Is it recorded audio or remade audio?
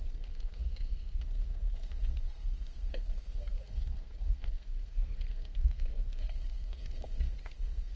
remade